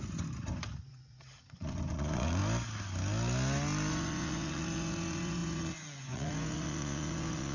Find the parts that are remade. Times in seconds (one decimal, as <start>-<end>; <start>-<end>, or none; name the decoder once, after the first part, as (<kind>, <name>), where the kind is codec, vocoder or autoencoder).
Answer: 0.0-2.4 (vocoder, Vocos); 3.9-7.5

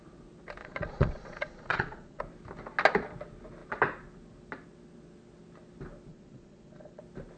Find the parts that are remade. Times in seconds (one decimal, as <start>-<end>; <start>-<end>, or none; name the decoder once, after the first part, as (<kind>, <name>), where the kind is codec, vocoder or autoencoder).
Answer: 0.6-2.2 (vocoder, Vocos); 6.1-7.0

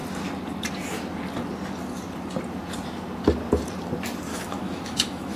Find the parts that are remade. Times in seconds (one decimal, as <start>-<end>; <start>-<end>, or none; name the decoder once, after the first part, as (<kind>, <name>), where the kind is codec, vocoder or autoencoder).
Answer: 4.3-5.4 (autoencoder, DAC-VAE)